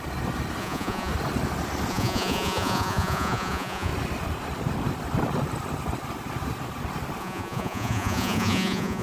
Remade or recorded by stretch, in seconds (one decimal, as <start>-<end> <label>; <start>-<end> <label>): 0.0-0.6 recorded; 0.6-1.1 remade; 1.1-1.9 recorded; 1.9-3.9 remade; 3.9-7.2 recorded; 7.2-9.0 remade